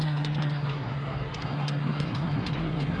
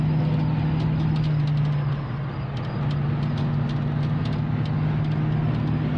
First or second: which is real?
second